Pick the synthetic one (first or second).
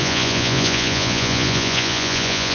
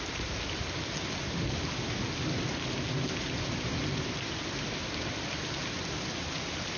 first